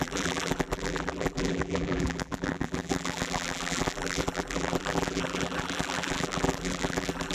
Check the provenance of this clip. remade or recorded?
remade